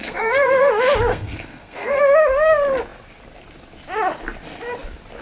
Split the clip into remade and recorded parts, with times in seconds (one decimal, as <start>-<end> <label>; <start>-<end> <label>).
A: 0.0-0.7 remade; 0.7-1.1 recorded; 1.1-2.0 remade; 2.0-5.2 recorded